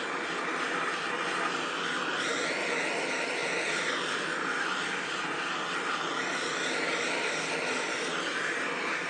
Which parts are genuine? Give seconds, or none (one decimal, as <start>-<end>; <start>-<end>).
0.0-9.1